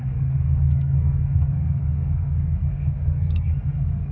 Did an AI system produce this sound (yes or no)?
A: yes